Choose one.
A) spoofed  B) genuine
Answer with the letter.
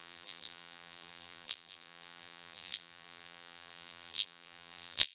A